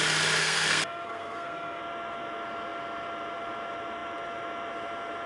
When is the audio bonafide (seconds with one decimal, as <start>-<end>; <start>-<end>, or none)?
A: 0.0-0.4; 1.8-5.3